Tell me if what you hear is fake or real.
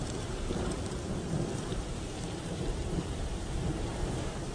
fake